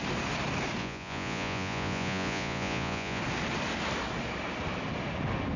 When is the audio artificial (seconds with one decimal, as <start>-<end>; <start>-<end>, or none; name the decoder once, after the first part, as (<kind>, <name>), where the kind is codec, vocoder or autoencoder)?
0.8-3.2 (vocoder, Vocos)